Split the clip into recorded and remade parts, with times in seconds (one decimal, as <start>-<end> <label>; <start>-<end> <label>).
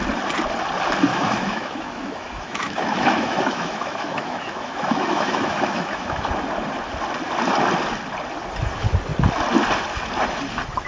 0.0-1.1 recorded; 1.1-6.3 remade; 6.3-10.9 recorded